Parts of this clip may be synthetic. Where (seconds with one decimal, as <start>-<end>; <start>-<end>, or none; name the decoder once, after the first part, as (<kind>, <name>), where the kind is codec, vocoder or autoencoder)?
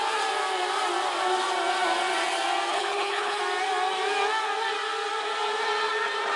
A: 2.7-3.4 (codec, HILCodec)